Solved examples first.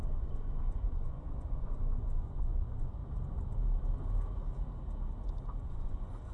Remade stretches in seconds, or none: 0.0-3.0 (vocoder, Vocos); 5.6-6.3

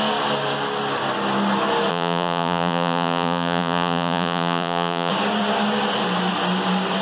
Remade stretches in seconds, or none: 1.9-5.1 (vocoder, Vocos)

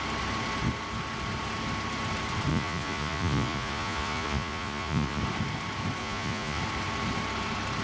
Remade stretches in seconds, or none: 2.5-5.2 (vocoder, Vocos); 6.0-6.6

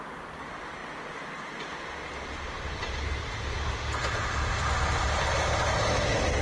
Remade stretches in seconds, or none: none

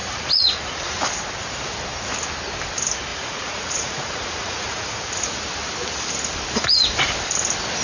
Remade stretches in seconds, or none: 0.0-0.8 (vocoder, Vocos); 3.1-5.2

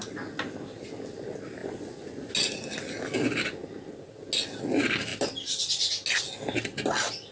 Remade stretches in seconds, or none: 1.6-2.3 (vocoder, Vocos)